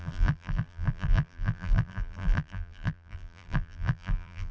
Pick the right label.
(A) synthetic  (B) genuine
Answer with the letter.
A